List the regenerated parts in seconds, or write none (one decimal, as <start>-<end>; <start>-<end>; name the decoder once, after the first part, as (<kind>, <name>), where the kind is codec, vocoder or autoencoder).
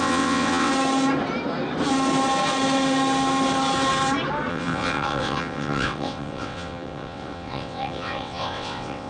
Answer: 0.0-0.7 (vocoder, WaveNeXt); 4.5-9.1